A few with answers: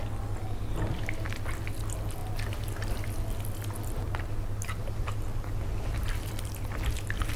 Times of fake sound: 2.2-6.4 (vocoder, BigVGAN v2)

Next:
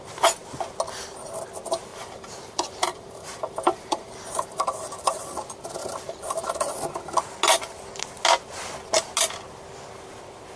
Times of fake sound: 1.9-5.3 (vocoder, BigVGAN v2); 5.8-6.5

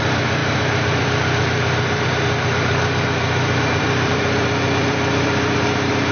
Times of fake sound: 0.0-6.1 (vocoder, BigVGAN v2)

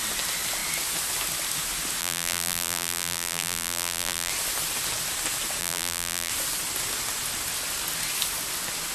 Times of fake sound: 2.0-4.3 (vocoder, BigVGAN v2); 5.6-6.3

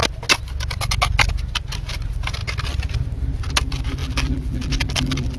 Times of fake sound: 4.0-5.4 (vocoder, BigVGAN v2)

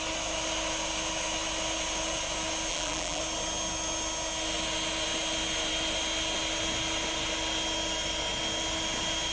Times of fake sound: 2.7-3.2 (vocoder, BigVGAN v2)

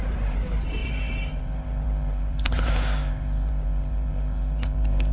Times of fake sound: 0.0-5.1 (vocoder, BigVGAN v2)